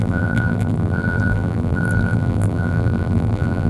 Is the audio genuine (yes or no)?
no